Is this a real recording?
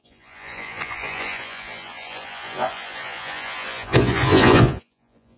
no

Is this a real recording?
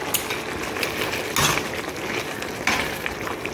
yes